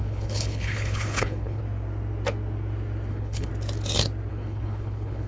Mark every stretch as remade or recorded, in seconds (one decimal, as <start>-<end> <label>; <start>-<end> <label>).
0.0-1.6 remade; 1.6-3.1 recorded; 3.1-3.5 remade; 3.5-4.3 recorded; 4.3-5.3 remade